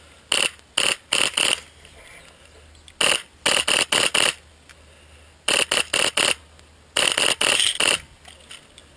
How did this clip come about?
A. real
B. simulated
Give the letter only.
A